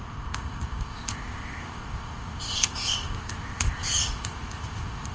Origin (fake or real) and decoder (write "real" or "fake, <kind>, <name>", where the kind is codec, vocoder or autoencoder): fake, codec, ZipCodec